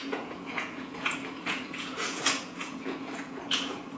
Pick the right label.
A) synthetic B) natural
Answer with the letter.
A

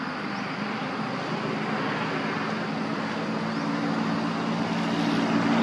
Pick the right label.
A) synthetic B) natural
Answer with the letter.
B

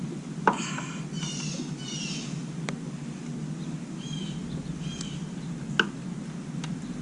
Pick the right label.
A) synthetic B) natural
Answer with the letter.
B